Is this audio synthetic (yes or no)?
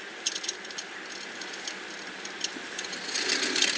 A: no